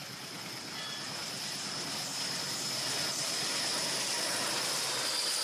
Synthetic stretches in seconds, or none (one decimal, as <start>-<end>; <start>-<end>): none